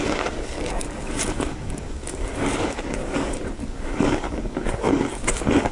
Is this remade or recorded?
remade